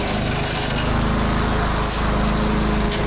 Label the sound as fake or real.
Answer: real